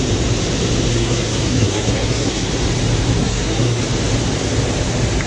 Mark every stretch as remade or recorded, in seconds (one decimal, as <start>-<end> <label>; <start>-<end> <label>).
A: 0.0-0.9 recorded; 0.9-2.5 remade; 2.5-3.2 recorded; 3.2-3.8 remade; 3.8-5.3 recorded